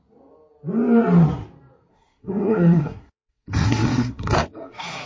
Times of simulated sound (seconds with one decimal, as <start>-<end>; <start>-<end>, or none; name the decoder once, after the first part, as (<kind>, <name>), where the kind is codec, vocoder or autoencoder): 1.9-5.1 (codec, SNAC)